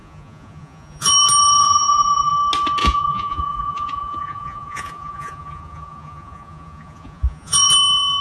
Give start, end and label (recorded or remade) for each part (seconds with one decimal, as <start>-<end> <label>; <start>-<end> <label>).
0.0-1.2 remade; 1.2-1.6 recorded; 1.6-2.3 remade; 2.3-2.8 recorded; 2.8-7.7 remade; 7.7-8.2 recorded